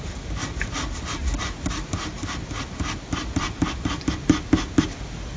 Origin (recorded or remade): recorded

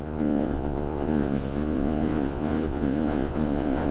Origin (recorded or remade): remade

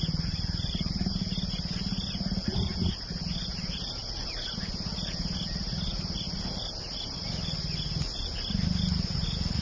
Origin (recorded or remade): recorded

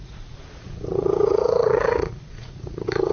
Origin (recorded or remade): remade